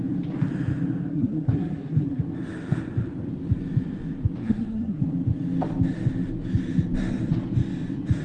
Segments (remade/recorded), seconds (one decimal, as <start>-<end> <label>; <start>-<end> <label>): 0.0-1.1 recorded; 1.1-2.2 remade; 2.2-4.4 recorded; 4.4-5.0 remade; 5.0-8.2 recorded